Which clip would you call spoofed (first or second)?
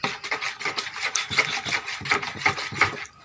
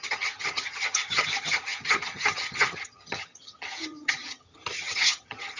second